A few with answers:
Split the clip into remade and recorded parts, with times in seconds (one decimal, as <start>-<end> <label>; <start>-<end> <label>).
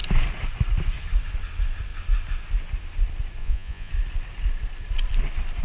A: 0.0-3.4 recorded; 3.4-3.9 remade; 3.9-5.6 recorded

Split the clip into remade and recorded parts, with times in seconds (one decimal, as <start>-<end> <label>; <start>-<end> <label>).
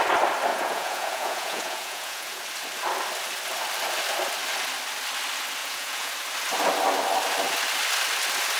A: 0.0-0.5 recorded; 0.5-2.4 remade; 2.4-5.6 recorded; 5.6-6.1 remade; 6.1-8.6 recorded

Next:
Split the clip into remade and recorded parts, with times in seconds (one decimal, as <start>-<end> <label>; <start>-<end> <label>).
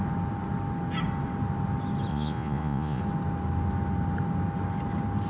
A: 0.0-2.1 recorded; 2.1-3.0 remade; 3.0-5.3 recorded